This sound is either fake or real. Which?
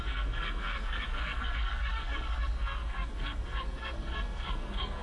fake